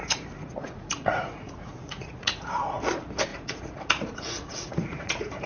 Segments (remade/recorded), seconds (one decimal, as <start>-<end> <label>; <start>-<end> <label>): 0.0-2.8 remade; 2.8-3.3 recorded; 3.3-5.5 remade

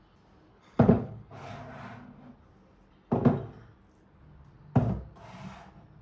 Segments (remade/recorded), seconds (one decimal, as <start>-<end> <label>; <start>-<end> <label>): 0.0-0.5 recorded; 0.5-1.5 remade; 1.5-6.0 recorded

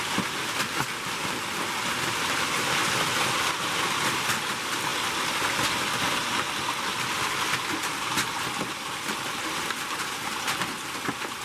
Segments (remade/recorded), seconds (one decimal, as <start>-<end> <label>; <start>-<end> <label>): 0.0-11.4 recorded

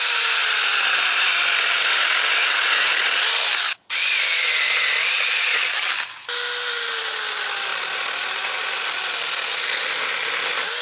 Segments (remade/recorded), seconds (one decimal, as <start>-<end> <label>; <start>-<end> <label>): 0.0-10.8 recorded

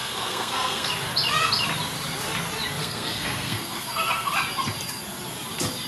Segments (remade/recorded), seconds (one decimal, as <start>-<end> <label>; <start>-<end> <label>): 0.0-0.9 remade; 0.9-2.8 recorded; 2.8-4.3 remade; 4.3-5.9 recorded

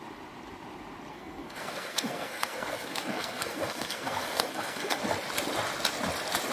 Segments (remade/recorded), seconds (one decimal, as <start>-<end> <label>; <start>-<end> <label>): 0.0-1.1 recorded; 1.1-5.0 remade; 5.0-6.5 recorded